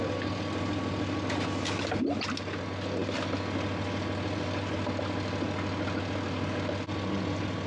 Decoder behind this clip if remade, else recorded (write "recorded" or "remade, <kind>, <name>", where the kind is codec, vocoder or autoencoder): recorded